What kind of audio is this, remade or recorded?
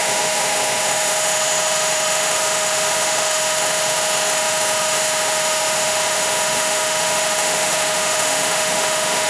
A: remade